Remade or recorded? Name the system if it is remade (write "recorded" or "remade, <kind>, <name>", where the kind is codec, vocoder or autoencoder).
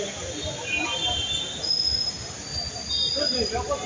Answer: recorded